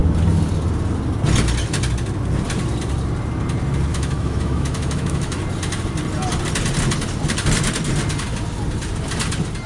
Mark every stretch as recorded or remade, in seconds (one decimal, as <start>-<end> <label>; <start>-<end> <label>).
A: 0.0-3.9 recorded; 3.9-5.4 remade; 5.4-9.7 recorded